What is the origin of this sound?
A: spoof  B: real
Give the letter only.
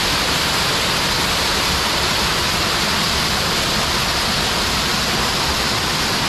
B